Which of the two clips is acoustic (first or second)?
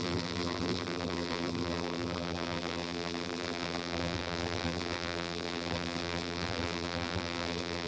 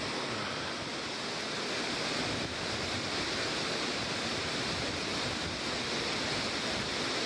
second